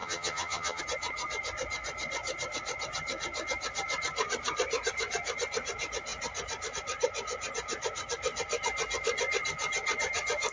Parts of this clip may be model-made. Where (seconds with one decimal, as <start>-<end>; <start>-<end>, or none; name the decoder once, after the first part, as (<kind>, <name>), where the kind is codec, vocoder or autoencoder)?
0.0-0.8 (vocoder, HiFi-GAN)